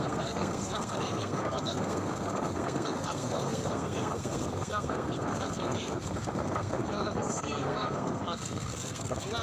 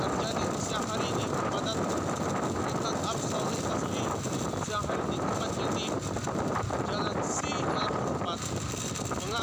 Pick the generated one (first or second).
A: first